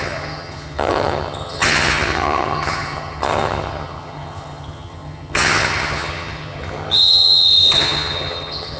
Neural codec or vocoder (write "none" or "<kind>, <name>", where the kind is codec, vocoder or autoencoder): vocoder, HiFi-GAN